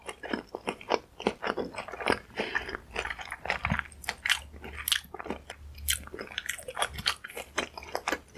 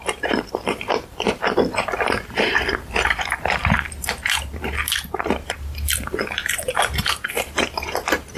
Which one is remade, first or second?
second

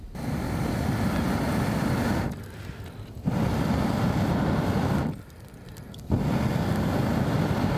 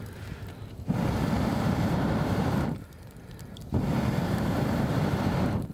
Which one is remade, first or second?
second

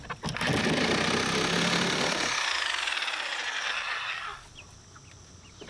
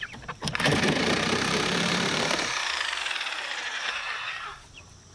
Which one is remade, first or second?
second